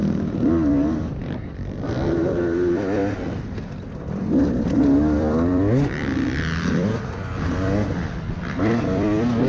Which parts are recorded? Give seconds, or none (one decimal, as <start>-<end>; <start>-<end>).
0.0-1.0; 3.0-4.5